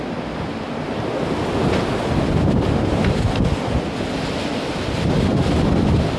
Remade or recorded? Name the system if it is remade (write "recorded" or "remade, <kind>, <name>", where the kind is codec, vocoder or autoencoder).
recorded